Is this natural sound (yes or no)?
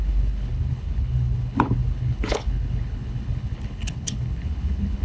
no